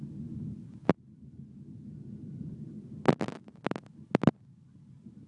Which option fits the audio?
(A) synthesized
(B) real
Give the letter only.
B